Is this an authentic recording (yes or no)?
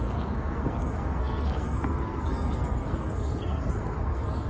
no